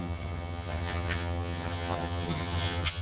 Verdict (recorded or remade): remade